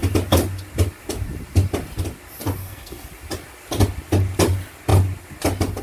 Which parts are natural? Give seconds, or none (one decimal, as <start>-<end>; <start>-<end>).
0.0-2.6; 3.1-5.8

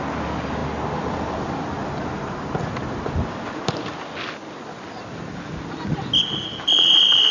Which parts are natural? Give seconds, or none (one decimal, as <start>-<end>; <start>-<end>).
0.0-7.3

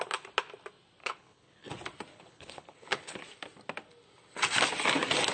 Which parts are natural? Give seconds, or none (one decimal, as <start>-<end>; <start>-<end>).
0.0-1.0; 1.7-2.1; 3.2-5.3

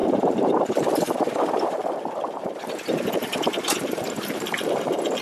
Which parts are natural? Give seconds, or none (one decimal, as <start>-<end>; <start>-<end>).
none

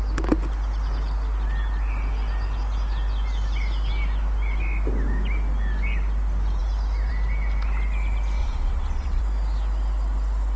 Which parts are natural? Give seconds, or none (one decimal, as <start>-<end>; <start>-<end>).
0.0-8.4; 9.2-10.6